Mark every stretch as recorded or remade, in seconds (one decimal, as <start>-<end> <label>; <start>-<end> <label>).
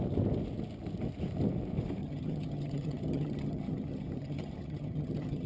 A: 0.0-2.0 recorded; 2.0-5.5 remade